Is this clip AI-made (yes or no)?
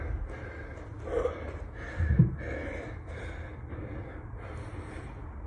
no